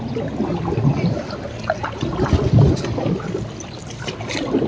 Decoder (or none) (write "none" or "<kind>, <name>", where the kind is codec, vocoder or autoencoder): none